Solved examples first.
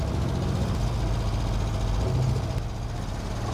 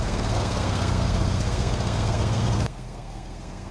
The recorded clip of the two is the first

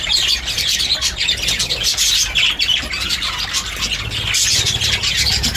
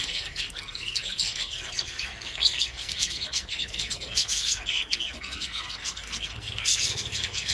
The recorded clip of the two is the first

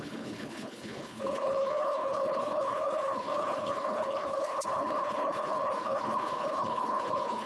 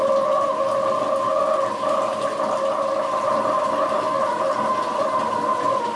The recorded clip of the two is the second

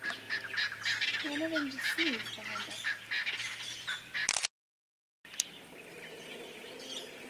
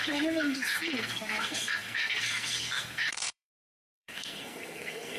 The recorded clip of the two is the first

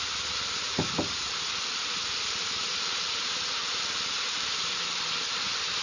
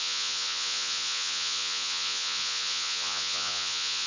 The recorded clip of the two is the first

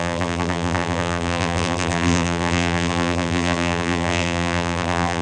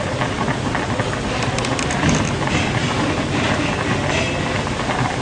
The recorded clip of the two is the second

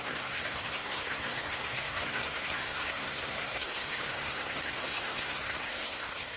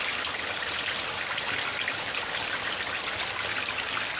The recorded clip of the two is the second